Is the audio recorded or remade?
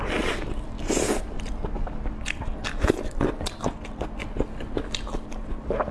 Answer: recorded